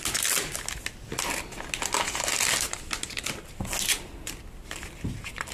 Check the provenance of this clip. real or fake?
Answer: real